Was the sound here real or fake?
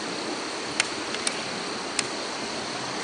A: real